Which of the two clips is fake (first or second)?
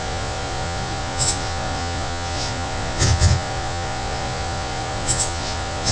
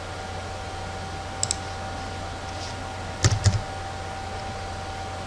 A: first